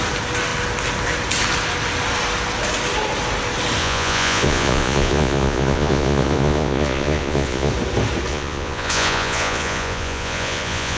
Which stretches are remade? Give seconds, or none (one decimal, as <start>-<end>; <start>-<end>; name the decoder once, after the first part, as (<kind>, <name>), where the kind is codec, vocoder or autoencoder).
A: 3.8-7.7 (vocoder, Vocos); 8.3-11.0